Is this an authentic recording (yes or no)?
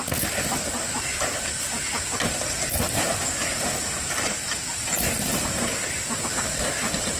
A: no